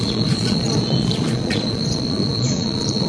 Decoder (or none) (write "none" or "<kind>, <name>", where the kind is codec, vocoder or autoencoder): vocoder, Vocos